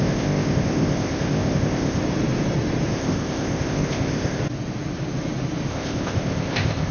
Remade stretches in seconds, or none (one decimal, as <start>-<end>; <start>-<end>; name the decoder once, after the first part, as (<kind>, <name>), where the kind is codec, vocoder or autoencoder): 0.0-2.0 (codec, ZipCodec); 2.9-4.4; 5.7-6.9